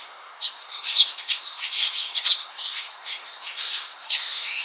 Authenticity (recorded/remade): remade